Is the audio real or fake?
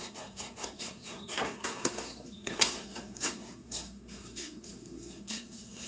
fake